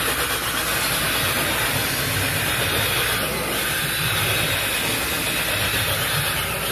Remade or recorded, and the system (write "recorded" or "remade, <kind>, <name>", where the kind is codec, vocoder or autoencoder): recorded